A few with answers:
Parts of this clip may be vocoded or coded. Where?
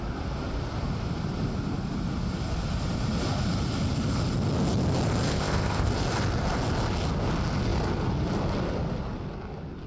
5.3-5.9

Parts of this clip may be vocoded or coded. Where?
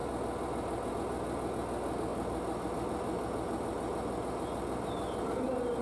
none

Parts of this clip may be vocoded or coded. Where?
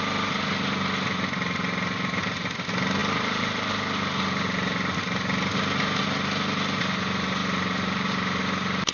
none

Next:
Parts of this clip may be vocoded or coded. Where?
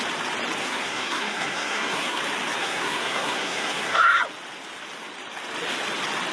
0.6-2.2; 2.6-4.2